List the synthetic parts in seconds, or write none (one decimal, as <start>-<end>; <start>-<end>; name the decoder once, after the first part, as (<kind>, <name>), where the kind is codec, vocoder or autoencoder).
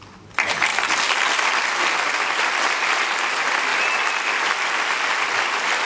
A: none